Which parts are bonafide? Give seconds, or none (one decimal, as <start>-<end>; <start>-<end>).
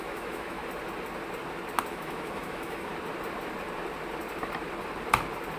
0.6-1.9; 2.9-5.6